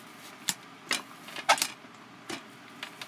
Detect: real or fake real